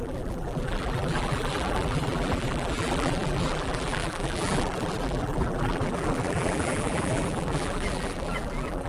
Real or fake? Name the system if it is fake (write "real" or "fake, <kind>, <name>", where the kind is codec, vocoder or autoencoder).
fake, vocoder, BigVGAN v2